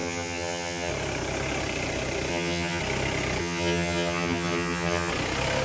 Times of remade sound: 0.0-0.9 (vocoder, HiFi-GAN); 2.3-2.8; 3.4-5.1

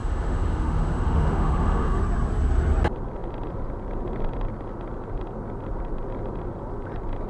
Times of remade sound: 0.0-2.0 (autoencoder, DAC-VAE)

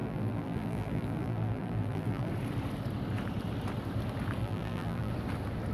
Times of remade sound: 0.0-2.3 (vocoder, BigVGAN v2); 4.4-5.1

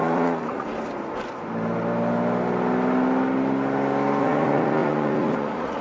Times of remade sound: 0.0-0.7 (vocoder, Vocos); 4.2-5.8

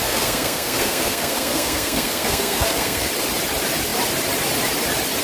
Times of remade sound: 0.0-3.1 (codec, SNAC)